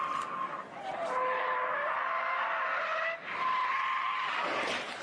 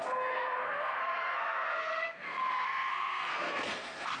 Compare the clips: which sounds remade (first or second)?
second